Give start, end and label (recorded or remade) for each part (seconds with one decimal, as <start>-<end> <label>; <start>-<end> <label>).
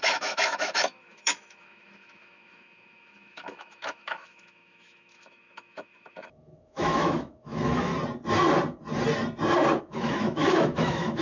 0.0-7.9 remade; 7.9-9.8 recorded; 9.8-11.2 remade